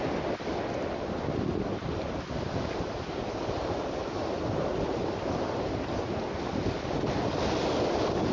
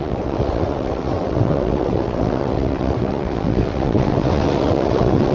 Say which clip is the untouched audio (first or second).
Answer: first